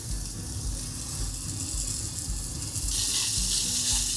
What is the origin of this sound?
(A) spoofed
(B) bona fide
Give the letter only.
B